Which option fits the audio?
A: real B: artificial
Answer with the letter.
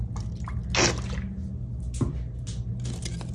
A